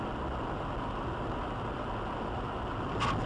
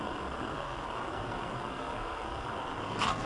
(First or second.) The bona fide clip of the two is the first